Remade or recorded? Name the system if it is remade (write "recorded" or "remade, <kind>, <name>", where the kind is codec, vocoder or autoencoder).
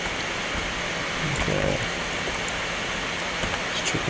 recorded